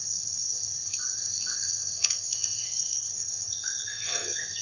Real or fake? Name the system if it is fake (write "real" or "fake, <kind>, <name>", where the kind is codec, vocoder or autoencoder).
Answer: fake, codec, SNAC